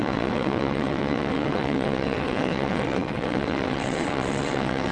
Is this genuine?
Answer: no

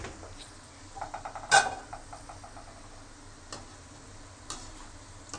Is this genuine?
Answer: yes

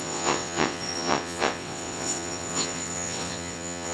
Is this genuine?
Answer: no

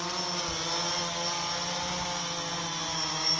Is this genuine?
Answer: yes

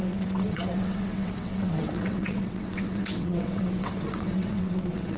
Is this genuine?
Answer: no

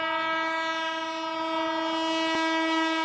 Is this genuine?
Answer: yes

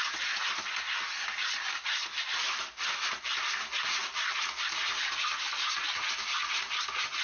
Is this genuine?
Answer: yes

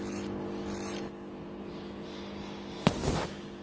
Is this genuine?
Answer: yes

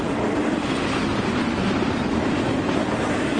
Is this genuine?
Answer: yes